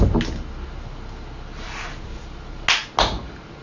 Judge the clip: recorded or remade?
recorded